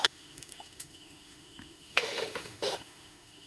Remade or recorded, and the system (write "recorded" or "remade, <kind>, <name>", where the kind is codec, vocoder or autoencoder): remade, autoencoder, DAC-VAE